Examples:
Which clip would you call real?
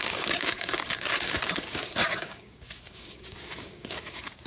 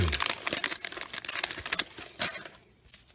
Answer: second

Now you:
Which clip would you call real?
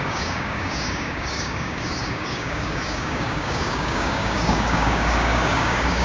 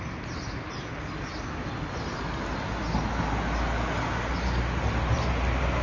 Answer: second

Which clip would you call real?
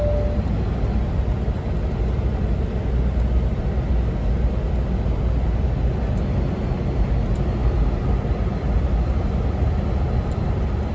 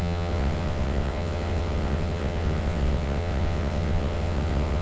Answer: first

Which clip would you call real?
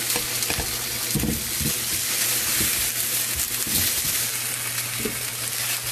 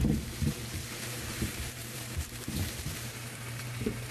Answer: first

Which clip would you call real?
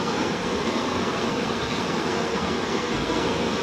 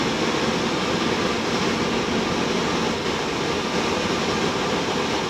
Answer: second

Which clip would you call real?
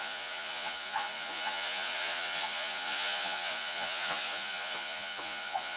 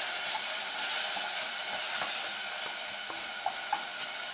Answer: second